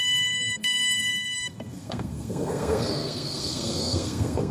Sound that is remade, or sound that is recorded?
remade